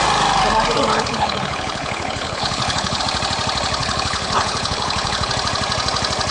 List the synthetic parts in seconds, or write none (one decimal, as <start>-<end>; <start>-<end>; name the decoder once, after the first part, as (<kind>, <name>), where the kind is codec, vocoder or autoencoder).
0.9-3.0 (codec, HILCodec); 3.8-5.3